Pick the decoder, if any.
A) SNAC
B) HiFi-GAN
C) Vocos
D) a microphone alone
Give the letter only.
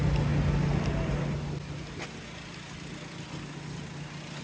D